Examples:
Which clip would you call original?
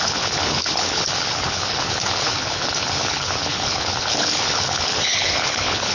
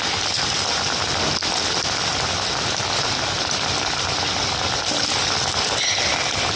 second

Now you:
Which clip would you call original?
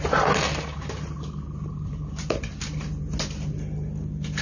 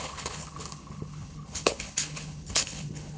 first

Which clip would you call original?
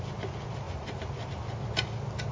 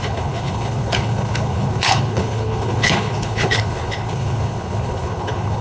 first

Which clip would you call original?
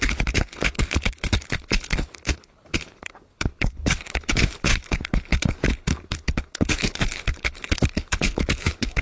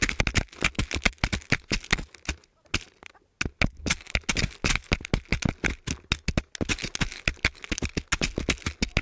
second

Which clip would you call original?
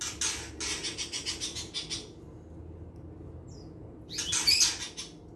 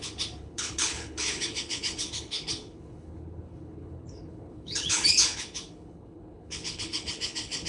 first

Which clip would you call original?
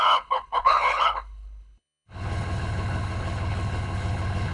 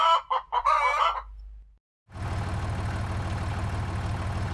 second